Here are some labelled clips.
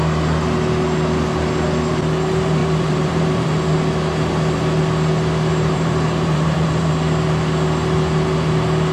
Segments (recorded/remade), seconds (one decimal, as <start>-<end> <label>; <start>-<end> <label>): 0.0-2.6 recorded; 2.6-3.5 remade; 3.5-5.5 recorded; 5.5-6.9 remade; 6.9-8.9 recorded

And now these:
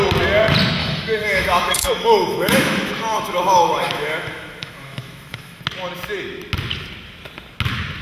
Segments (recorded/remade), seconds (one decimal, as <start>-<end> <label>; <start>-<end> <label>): 0.0-0.8 recorded; 0.8-5.6 remade; 5.6-8.0 recorded

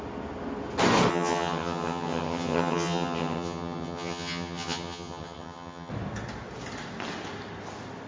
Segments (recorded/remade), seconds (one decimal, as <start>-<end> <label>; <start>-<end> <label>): 0.0-1.1 recorded; 1.1-5.9 remade; 5.9-8.1 recorded

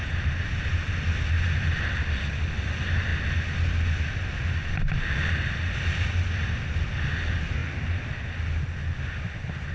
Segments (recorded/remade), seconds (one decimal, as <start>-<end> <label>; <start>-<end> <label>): 0.0-9.7 recorded